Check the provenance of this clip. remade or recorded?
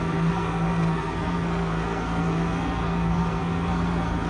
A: remade